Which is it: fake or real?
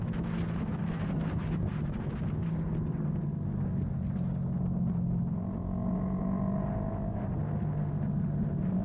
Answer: real